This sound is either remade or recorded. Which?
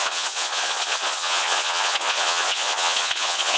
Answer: remade